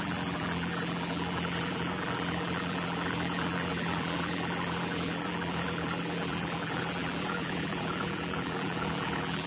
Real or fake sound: fake